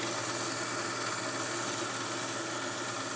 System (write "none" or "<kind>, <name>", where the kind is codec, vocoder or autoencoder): none